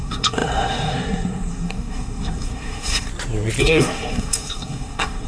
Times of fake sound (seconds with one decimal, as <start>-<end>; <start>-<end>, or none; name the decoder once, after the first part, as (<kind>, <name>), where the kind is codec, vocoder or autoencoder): 0.0-3.1 (codec, SNAC); 3.6-5.3